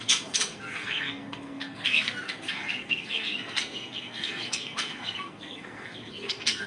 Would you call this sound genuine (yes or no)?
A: no